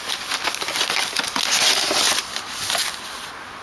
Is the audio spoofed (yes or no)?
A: no